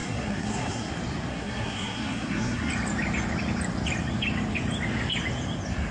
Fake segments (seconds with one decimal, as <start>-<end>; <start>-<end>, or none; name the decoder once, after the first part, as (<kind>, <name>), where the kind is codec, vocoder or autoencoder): 0.0-0.9 (codec, SNAC); 1.3-2.7